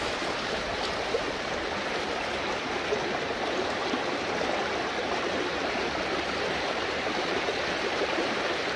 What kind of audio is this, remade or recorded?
remade